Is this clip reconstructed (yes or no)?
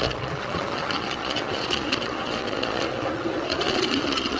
yes